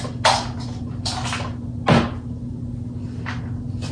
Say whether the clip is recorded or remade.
recorded